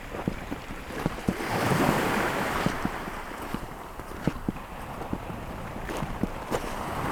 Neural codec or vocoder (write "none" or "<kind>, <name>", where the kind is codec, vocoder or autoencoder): vocoder, BigVGAN v2